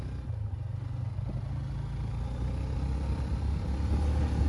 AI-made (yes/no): no